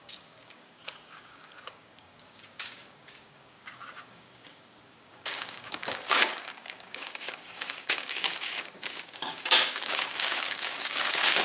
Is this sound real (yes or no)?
no